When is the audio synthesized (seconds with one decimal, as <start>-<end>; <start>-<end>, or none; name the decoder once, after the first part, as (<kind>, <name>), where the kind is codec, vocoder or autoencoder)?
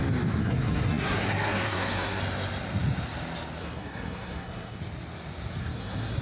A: 0.4-2.2 (codec, SNAC); 3.6-4.8; 5.6-6.2